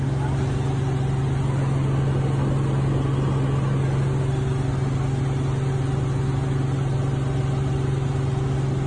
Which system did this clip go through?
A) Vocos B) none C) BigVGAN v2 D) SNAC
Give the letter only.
B